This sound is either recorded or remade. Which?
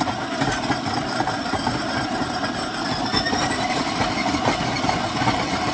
remade